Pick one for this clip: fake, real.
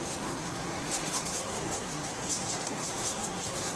fake